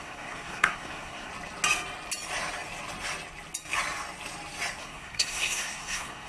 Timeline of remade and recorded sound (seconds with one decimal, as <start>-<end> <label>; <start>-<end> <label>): 0.0-1.3 remade; 1.3-4.8 recorded; 4.8-6.3 remade